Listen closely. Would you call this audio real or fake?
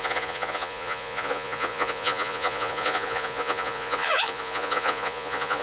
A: fake